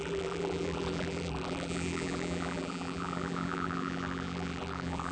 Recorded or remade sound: remade